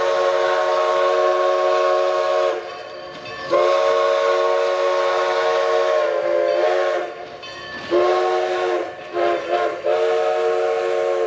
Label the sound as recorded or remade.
recorded